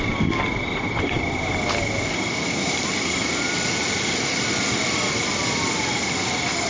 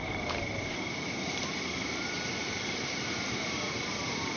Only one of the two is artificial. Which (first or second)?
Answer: second